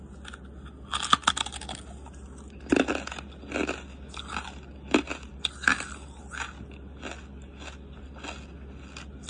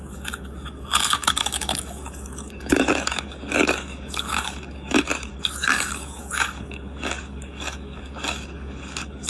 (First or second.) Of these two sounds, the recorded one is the first